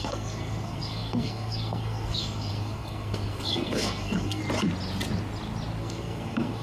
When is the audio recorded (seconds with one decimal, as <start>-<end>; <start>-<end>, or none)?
4.4-5.8